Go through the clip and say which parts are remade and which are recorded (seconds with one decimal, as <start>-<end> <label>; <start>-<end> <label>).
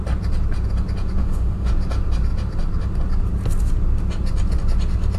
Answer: 0.0-1.2 recorded; 1.2-1.7 remade; 1.7-5.2 recorded